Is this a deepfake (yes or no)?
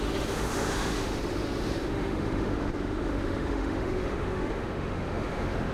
yes